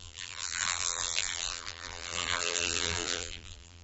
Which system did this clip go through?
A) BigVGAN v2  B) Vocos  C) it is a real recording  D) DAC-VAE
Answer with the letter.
A